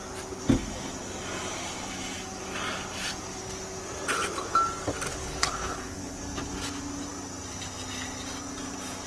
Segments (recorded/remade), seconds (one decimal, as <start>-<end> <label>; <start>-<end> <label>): 0.0-5.1 recorded; 5.1-6.2 remade; 6.2-9.1 recorded